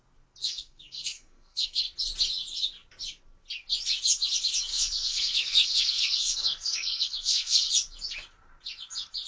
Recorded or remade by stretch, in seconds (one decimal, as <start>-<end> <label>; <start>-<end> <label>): 0.0-0.4 recorded; 0.4-1.8 remade; 1.8-4.7 recorded; 4.7-7.7 remade; 7.7-9.3 recorded